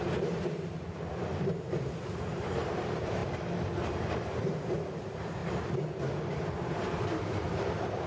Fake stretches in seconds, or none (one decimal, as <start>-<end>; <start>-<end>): 0.0-5.4; 6.2-8.1